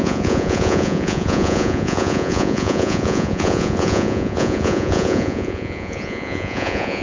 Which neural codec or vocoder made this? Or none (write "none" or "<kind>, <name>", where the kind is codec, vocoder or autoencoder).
vocoder, Vocos